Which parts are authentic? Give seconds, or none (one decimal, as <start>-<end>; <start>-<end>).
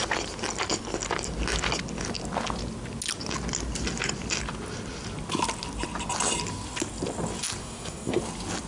0.0-7.6; 8.2-8.7